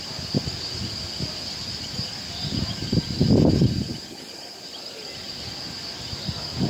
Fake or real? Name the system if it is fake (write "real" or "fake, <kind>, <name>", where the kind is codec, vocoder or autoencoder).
real